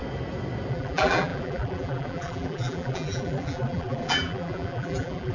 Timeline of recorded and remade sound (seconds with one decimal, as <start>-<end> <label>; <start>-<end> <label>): 0.0-0.7 recorded; 0.7-5.3 remade